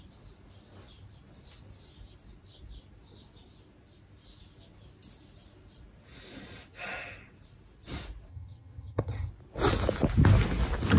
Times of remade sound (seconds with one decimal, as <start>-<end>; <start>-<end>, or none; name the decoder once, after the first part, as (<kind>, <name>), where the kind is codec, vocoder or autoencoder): 8.3-9.3 (vocoder, HiFi-GAN)